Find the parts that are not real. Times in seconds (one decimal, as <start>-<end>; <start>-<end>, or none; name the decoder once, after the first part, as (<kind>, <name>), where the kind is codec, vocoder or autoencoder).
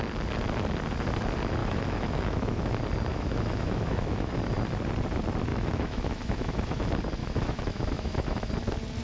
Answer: 1.6-2.7 (autoencoder, DAC-VAE); 3.1-4.3; 5.5-6.8; 7.2-8.5